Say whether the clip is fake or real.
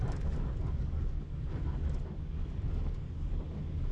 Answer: fake